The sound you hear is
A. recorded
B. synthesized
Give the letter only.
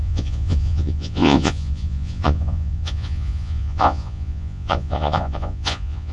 B